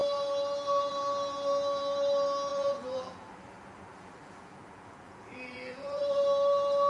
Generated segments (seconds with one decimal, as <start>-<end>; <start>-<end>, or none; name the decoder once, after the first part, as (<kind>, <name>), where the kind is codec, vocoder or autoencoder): 2.5-6.0 (vocoder, BigVGAN v2)